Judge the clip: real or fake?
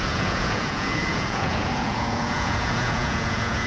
fake